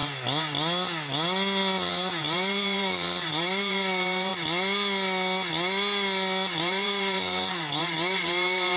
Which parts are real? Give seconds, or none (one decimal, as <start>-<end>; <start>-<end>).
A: 0.0-1.9; 4.3-6.6